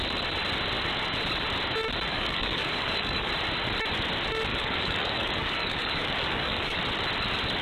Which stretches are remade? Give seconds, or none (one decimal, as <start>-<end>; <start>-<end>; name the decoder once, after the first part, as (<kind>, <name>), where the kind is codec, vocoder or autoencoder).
2.1-3.3 (codec, DAC); 4.5-6.8